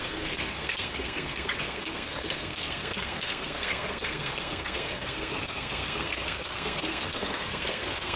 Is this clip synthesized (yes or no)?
yes